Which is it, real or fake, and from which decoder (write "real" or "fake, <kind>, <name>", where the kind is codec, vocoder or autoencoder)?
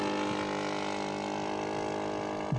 real